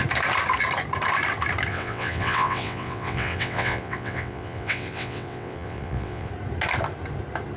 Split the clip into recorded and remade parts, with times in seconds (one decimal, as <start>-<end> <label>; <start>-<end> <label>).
0.0-1.7 recorded; 1.7-6.3 remade; 6.3-7.6 recorded